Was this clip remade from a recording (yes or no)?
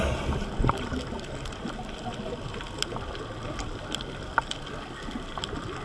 no